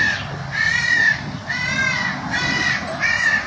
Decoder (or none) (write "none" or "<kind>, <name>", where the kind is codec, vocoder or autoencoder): none